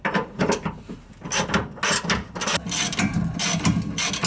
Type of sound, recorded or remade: recorded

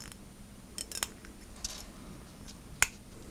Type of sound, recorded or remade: recorded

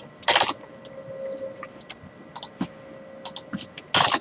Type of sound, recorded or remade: recorded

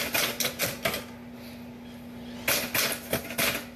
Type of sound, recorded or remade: recorded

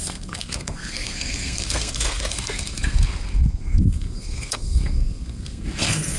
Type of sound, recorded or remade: remade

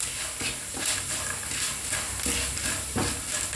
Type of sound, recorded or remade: recorded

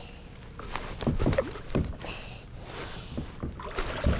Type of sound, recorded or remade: recorded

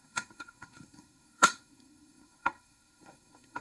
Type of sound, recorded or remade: remade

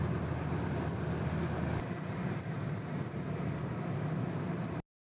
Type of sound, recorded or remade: recorded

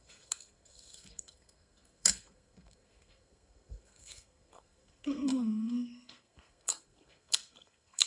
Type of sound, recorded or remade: remade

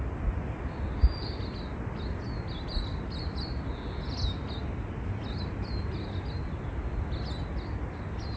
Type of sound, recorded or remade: recorded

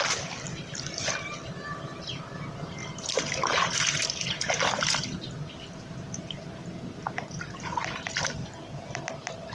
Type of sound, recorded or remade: recorded